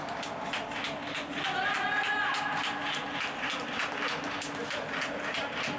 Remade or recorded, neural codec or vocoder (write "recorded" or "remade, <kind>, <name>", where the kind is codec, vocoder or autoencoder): recorded